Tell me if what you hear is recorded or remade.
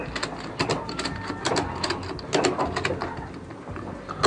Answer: remade